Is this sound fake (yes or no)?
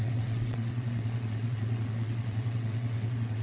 yes